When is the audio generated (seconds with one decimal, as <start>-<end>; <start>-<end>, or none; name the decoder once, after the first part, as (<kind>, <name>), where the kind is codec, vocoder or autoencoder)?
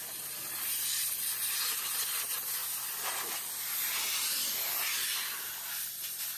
none